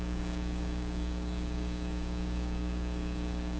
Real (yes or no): no